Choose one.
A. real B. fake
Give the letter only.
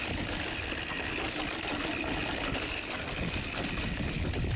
A